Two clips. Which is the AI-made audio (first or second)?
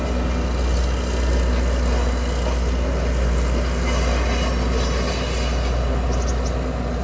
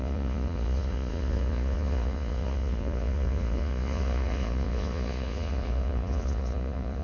second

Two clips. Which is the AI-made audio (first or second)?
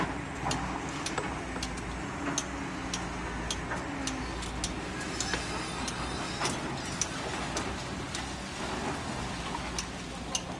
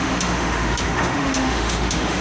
second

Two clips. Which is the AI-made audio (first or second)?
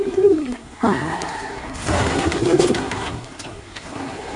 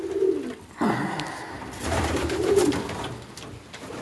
first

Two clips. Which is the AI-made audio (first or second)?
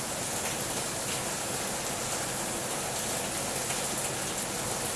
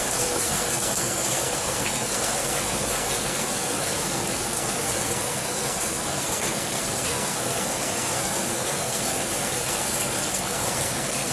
second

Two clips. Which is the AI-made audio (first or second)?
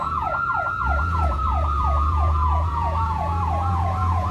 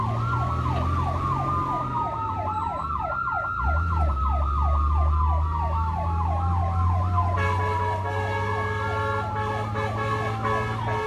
first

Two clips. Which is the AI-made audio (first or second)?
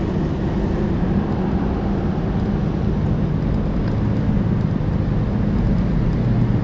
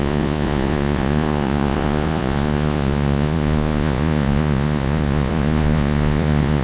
second